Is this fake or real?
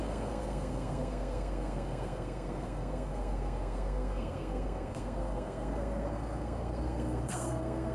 fake